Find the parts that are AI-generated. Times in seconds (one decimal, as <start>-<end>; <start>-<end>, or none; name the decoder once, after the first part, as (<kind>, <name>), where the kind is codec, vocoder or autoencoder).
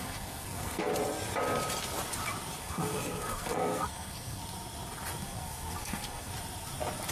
0.0-0.9 (codec, SNAC); 2.6-4.4; 5.2-6.3